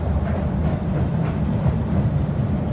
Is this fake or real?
real